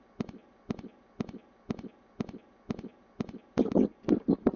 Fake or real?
real